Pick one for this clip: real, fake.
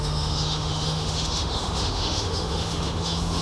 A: fake